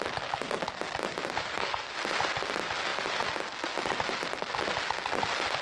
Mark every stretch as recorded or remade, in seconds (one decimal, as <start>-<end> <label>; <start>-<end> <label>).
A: 0.0-1.4 recorded; 1.4-1.9 remade; 1.9-5.6 recorded